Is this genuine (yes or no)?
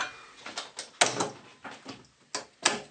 yes